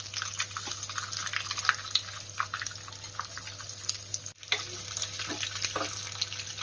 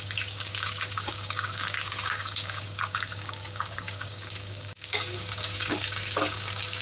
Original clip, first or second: first